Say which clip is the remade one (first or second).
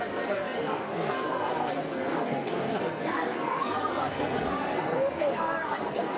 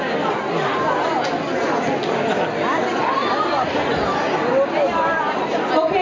first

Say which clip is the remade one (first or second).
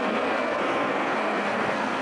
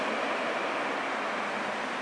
first